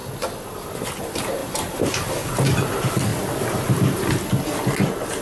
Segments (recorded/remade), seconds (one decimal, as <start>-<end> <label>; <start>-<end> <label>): 0.0-1.4 recorded; 1.4-2.0 remade; 2.0-5.2 recorded